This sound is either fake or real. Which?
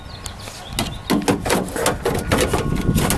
real